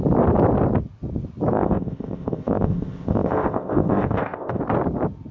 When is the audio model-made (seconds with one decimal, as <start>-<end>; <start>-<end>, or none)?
1.5-4.6